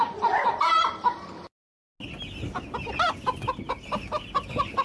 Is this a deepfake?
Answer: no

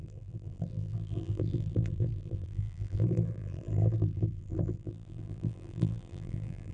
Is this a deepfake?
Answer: yes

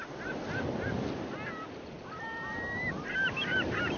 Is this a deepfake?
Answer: no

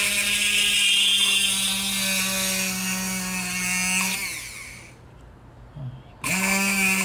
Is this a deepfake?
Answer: no